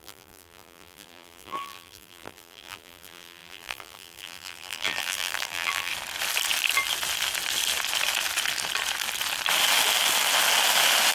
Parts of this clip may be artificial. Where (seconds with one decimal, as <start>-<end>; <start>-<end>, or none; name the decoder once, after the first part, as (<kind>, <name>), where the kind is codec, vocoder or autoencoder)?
0.0-5.9 (vocoder, BigVGAN v2)